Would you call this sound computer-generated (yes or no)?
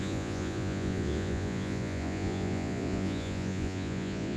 yes